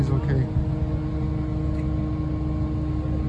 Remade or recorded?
recorded